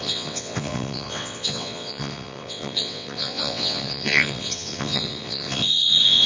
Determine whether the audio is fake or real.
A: fake